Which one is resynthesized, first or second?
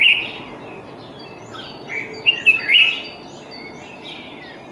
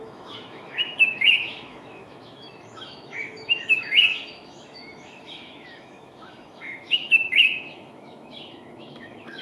second